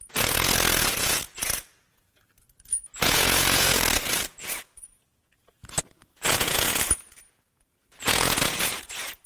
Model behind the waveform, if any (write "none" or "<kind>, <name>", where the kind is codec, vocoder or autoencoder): vocoder, Vocos